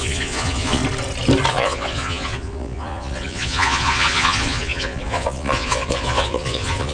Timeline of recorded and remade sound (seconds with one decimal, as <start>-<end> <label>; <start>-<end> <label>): 0.0-0.8 remade; 0.8-1.5 recorded; 1.5-6.9 remade